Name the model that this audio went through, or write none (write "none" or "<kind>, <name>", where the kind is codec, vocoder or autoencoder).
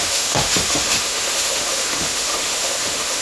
autoencoder, DAC-VAE